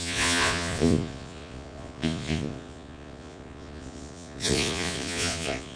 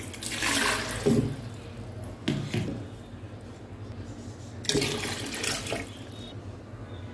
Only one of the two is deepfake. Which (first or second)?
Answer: first